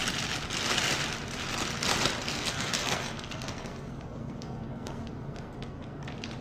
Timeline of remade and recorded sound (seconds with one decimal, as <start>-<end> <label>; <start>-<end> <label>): 0.0-2.2 recorded; 2.2-6.0 remade; 6.0-6.4 recorded